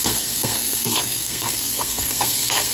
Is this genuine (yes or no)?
no